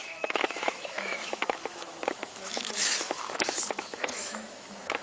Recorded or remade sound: remade